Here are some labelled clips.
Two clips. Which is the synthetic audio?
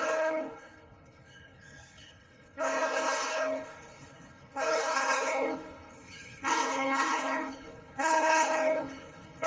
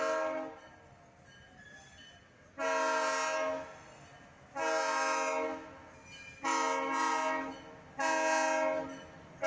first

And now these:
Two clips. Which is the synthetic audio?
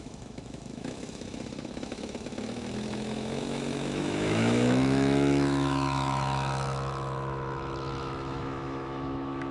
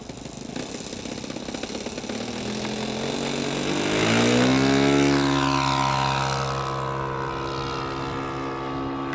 first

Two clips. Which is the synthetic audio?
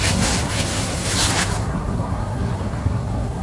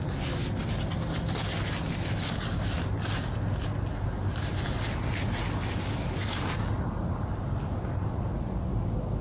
first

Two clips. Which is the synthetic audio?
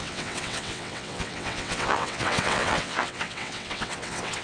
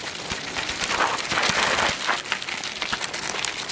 first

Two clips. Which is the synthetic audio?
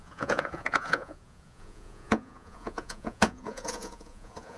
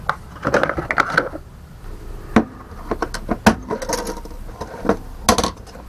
first